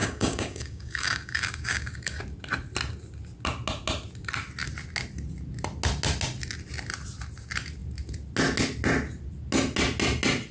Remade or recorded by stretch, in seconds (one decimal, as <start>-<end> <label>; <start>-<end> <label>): 0.0-2.2 remade; 2.2-10.5 recorded